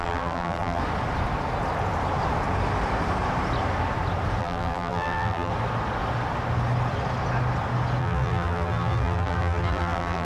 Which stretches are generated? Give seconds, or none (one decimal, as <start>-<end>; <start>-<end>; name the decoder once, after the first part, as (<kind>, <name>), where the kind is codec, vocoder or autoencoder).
0.0-0.8 (vocoder, BigVGAN v2); 4.4-5.5; 8.0-10.2